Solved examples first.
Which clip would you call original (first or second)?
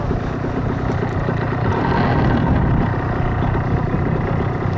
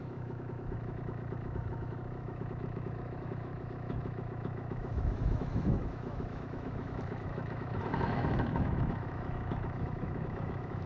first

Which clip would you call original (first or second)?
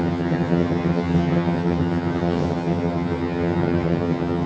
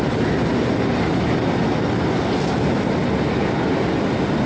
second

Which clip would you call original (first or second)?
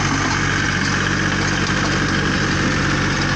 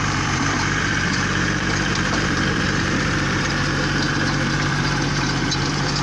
first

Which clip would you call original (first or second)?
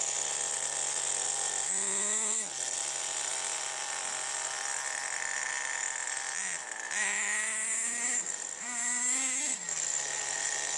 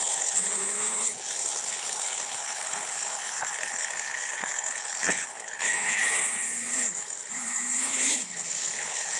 first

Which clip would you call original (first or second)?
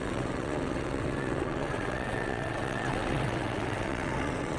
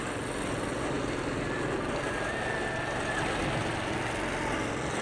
second